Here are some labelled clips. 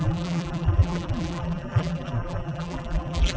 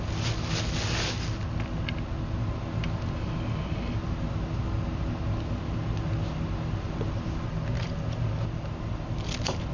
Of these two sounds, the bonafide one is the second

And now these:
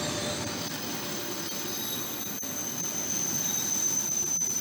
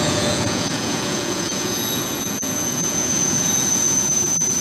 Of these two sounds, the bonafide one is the first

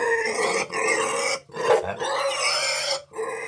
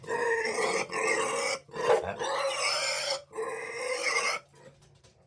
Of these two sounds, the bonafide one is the first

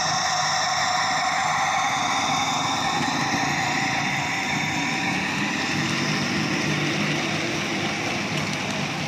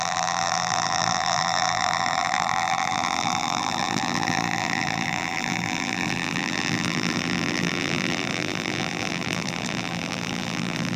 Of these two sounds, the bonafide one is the first